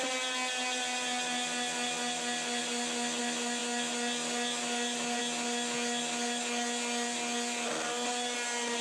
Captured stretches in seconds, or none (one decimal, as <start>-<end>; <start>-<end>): 0.0-8.8